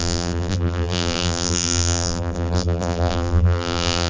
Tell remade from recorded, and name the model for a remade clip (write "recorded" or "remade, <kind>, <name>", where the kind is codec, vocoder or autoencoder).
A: remade, vocoder, BigVGAN v2